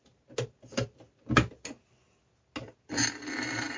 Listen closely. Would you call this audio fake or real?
real